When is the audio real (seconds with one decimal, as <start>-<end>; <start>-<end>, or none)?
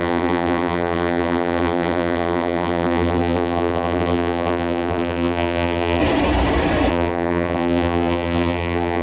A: 6.0-6.9